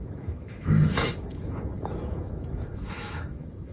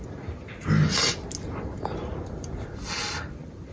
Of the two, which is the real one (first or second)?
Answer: second